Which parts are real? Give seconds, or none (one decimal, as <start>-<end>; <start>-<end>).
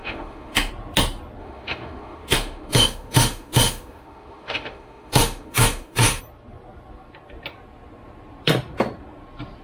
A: 0.7-1.4; 6.2-9.6